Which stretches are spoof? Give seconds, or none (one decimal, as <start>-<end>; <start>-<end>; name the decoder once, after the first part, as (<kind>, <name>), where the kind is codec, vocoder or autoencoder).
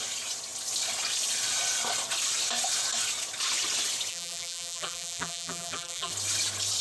4.1-6.1 (vocoder, BigVGAN v2)